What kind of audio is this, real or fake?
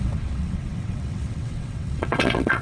fake